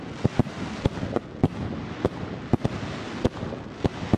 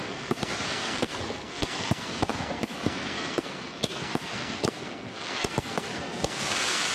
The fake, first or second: second